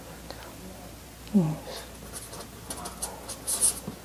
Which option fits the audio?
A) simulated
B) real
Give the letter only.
B